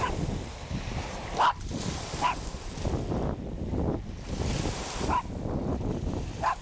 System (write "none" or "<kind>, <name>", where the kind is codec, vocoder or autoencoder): none